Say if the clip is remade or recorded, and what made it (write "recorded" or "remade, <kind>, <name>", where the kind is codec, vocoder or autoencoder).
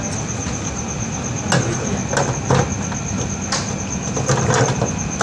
recorded